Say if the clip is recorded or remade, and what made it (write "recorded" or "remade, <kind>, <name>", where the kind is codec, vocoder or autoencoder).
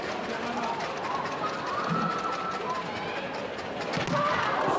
recorded